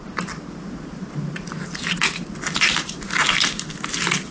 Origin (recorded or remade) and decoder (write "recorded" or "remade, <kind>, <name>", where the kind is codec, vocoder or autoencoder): recorded